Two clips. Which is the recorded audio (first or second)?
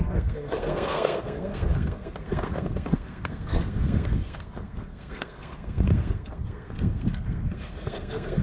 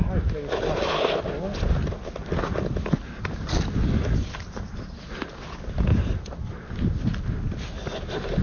second